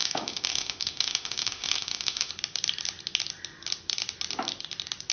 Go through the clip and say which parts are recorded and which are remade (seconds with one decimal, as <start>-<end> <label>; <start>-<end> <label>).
0.0-2.3 remade; 2.3-5.1 recorded